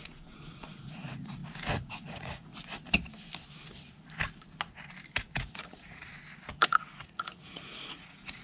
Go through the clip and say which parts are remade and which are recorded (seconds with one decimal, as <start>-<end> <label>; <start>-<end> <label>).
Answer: 0.0-1.4 remade; 1.4-1.9 recorded; 1.9-2.5 remade; 2.5-5.4 recorded; 5.4-6.1 remade; 6.1-6.6 recorded; 6.6-8.4 remade